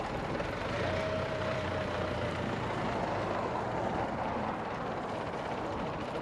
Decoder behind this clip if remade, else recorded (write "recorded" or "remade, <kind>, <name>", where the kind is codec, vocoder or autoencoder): recorded